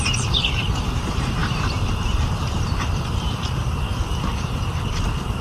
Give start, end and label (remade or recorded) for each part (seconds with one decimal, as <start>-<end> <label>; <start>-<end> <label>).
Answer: 0.0-5.4 remade